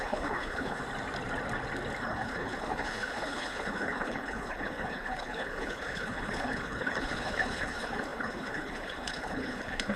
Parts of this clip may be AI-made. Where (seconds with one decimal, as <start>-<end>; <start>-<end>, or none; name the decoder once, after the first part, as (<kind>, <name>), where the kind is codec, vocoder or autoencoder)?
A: 0.0-0.8 (codec, HILCodec); 2.0-10.0